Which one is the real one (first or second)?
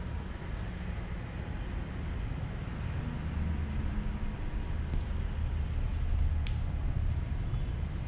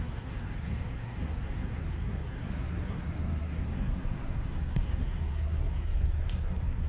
first